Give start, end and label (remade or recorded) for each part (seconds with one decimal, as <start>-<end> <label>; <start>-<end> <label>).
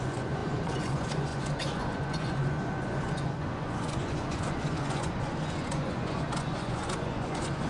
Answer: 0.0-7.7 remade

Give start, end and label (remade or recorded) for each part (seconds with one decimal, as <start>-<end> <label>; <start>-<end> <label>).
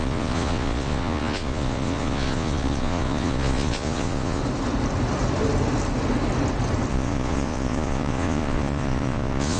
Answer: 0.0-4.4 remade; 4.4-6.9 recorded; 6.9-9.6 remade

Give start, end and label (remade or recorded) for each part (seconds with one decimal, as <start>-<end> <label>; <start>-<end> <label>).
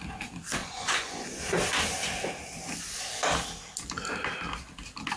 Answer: 0.0-0.6 recorded; 0.6-1.4 remade; 1.4-5.2 recorded